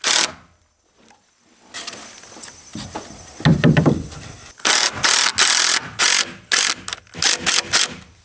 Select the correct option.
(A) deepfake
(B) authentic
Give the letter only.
B